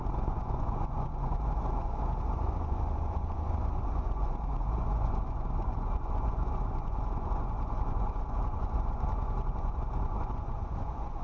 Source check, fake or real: fake